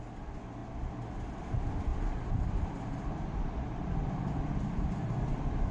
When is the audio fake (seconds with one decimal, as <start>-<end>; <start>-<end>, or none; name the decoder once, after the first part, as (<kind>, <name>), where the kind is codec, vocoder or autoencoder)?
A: 1.9-3.9 (vocoder, BigVGAN v2)